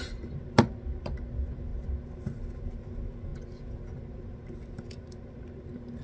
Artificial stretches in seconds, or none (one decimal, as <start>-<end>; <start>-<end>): none